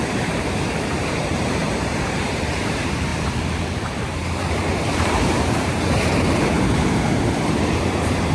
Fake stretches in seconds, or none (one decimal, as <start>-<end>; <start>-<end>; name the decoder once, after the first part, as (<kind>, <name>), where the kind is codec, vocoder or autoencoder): 0.0-3.1 (vocoder, BigVGAN v2); 4.5-8.3